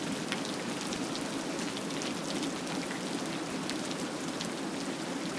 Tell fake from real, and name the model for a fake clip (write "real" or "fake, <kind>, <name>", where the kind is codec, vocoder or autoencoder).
real